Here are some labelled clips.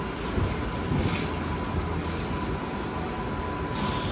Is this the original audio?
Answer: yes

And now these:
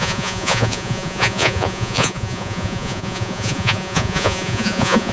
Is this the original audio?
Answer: no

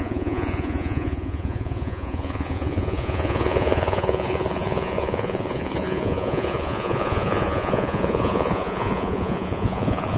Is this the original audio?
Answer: no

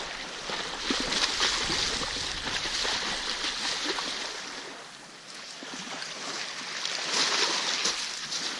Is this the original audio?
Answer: yes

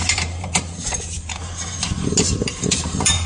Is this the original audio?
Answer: no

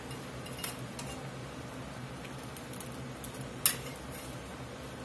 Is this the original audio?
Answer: yes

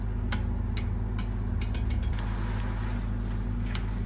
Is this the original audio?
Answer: yes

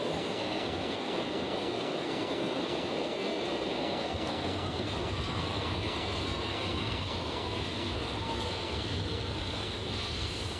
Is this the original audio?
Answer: no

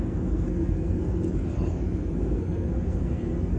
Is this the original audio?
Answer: no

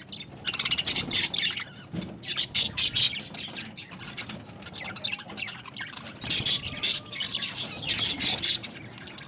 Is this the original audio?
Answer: yes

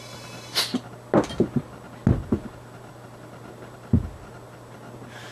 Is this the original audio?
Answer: yes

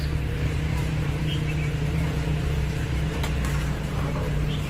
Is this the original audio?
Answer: no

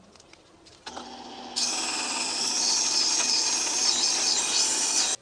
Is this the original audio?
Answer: yes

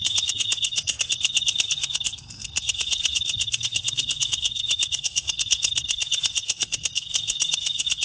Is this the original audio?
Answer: no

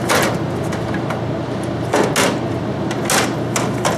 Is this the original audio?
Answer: yes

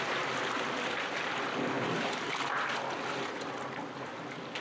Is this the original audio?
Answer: yes